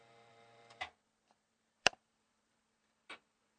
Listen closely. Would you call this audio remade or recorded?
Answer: remade